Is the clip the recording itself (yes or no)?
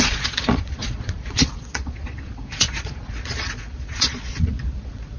no